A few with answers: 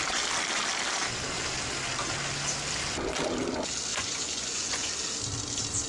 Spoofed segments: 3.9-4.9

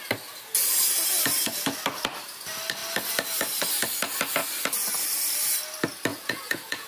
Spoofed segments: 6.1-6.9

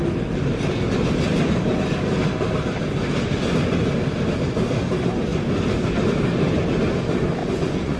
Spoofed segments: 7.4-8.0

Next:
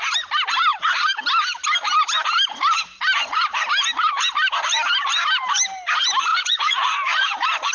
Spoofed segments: 6.3-7.7

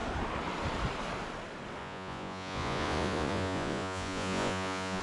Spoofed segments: 1.8-5.0

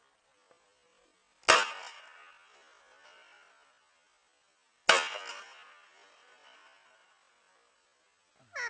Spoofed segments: none

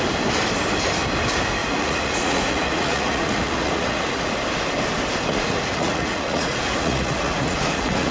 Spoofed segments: 1.6-4.3; 5.3-8.1